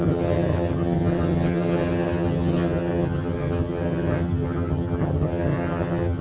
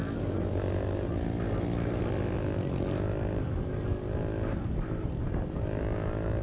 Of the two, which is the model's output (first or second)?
first